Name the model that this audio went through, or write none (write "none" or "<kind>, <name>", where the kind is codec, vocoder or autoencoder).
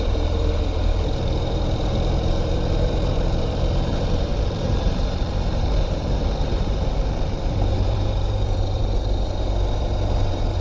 vocoder, BigVGAN v2